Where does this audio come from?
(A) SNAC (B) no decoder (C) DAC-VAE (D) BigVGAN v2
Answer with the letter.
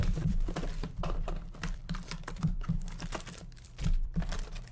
D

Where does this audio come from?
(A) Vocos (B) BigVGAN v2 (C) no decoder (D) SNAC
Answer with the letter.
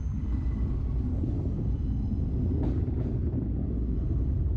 C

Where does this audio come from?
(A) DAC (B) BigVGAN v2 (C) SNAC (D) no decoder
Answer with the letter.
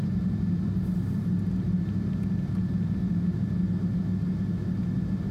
D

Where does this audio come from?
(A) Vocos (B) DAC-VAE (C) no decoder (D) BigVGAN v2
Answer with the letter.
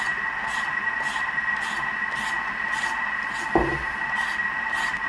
C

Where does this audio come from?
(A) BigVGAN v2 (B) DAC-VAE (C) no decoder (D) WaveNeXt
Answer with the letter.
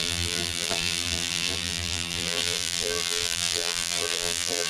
A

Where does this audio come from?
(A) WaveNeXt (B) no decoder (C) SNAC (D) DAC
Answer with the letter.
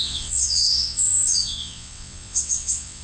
A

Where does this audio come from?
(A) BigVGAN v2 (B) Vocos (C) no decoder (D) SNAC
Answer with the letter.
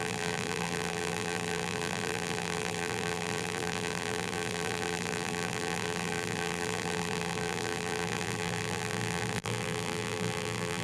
A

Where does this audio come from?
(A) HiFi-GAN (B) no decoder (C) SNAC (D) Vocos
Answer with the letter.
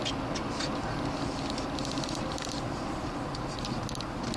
B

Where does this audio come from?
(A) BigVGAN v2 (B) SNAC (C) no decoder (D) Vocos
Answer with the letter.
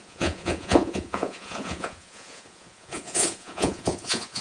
D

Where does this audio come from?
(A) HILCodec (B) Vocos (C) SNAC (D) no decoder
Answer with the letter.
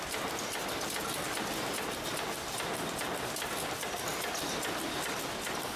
D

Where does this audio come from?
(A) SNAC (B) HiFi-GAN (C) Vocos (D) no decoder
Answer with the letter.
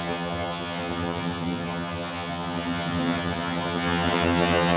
B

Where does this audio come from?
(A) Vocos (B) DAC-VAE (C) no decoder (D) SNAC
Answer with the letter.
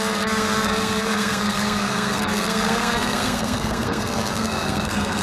D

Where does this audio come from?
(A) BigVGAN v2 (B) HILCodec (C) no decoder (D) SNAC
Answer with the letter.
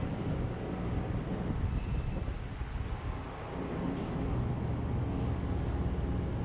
C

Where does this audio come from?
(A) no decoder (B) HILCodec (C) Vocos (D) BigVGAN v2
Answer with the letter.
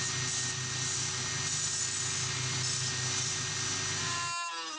A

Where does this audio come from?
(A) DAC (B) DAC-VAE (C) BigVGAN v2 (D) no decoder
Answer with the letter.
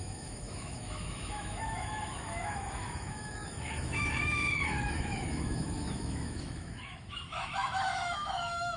B